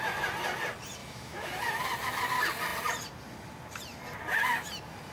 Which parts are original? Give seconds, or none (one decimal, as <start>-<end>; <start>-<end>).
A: 0.0-1.0; 1.6-5.1